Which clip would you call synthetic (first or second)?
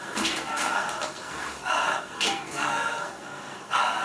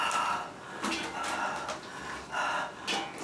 first